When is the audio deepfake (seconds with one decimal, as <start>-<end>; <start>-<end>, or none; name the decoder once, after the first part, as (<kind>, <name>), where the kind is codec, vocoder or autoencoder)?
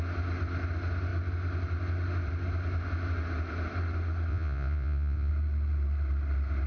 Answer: 4.3-5.3 (vocoder, Vocos)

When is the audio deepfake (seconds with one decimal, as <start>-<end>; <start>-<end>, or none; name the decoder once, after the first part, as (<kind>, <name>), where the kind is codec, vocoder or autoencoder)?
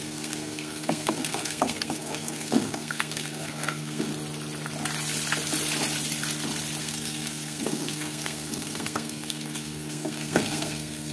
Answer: 0.0-4.1 (codec, SNAC); 6.8-11.1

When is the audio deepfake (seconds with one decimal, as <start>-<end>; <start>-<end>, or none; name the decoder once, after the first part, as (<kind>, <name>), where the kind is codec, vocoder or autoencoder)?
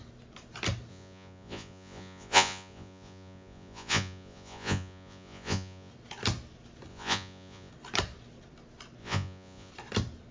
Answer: 0.9-5.9 (vocoder, Vocos); 6.9-7.7; 9.0-9.7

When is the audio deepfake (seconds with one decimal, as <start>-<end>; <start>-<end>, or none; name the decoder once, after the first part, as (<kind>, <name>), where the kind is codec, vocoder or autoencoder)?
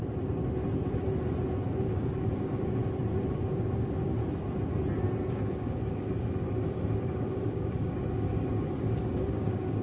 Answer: 1.8-2.8 (codec, DAC); 3.4-4.2; 5.3-9.8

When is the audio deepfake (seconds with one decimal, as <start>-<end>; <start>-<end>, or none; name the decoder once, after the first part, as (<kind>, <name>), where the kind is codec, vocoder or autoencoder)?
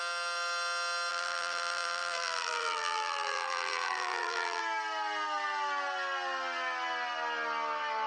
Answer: 1.1-4.6 (vocoder, BigVGAN v2)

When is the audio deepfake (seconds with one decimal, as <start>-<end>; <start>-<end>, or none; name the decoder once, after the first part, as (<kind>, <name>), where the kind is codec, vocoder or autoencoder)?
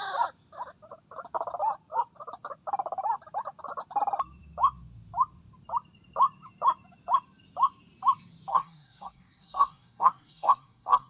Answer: 8.5-11.1 (codec, SNAC)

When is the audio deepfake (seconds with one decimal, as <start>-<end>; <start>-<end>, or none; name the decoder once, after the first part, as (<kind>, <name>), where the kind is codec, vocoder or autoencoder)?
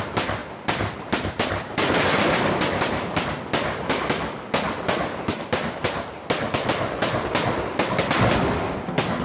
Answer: none